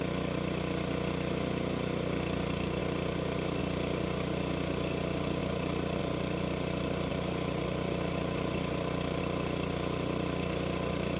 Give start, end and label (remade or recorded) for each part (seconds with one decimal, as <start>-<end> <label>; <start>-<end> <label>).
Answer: 0.0-2.8 recorded; 2.8-3.6 remade; 3.6-5.4 recorded; 5.4-6.0 remade; 6.0-7.1 recorded; 7.1-9.2 remade; 9.2-11.2 recorded